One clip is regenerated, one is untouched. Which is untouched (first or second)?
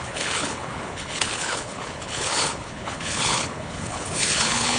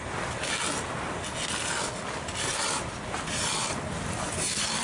second